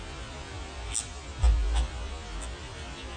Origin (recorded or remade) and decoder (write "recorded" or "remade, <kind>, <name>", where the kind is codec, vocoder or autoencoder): recorded